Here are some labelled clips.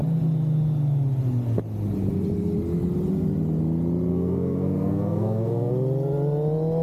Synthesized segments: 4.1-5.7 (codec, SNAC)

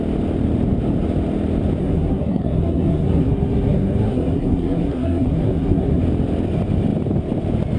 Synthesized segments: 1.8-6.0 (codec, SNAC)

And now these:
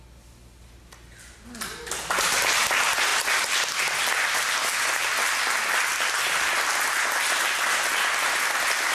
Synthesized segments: none